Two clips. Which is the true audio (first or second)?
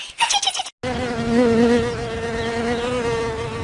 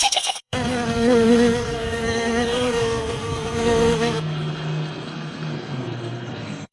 first